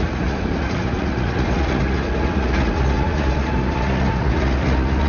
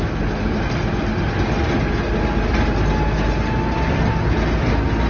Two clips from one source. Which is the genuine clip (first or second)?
second